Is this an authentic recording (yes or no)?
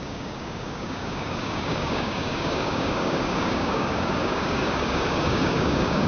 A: no